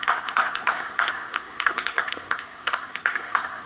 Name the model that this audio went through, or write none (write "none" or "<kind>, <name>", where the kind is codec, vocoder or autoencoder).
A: codec, SNAC